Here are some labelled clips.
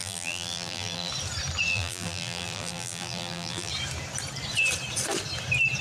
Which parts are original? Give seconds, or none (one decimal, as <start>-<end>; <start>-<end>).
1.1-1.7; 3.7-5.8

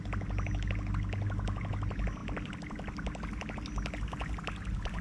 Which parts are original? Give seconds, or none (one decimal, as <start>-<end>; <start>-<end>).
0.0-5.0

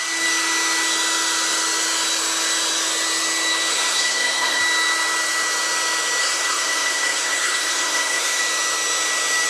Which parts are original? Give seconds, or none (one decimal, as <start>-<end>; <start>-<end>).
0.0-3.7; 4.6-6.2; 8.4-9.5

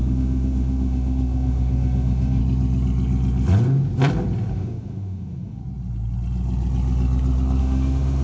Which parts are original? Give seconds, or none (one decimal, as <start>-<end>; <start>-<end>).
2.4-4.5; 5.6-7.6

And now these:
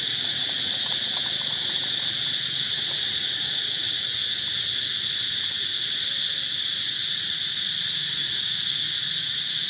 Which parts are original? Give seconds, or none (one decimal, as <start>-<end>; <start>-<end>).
4.2-7.2

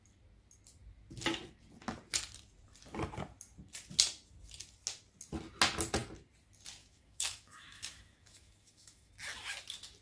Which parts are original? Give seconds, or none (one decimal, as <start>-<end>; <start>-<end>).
0.0-6.8; 9.1-10.0